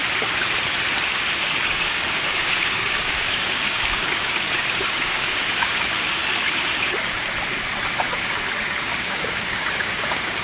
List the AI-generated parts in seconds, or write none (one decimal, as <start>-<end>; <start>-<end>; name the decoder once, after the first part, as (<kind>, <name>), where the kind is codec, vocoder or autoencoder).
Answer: 1.4-6.2 (codec, DAC); 8.8-10.4